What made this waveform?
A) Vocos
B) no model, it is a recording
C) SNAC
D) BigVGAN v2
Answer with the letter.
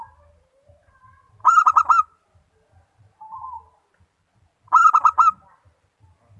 B